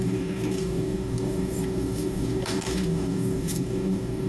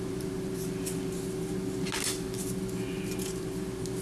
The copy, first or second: first